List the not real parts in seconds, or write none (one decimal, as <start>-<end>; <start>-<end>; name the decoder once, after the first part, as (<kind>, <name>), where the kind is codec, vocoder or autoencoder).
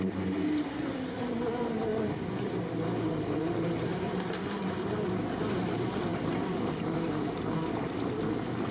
3.9-4.6 (vocoder, BigVGAN v2); 6.1-6.7